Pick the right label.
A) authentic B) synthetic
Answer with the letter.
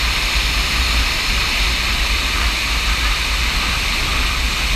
A